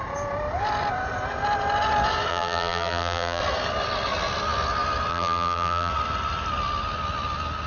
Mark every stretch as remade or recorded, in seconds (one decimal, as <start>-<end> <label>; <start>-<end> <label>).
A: 0.0-2.3 recorded; 2.3-3.4 remade; 3.4-5.1 recorded; 5.1-5.9 remade; 5.9-7.7 recorded